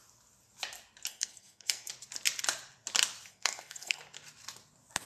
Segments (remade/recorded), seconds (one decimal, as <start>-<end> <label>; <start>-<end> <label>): 0.0-1.1 recorded; 1.1-1.9 remade; 1.9-3.3 recorded; 3.3-4.0 remade; 4.0-5.1 recorded